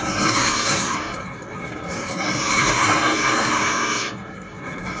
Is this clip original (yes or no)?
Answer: no